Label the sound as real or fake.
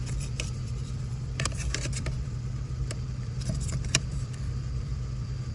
fake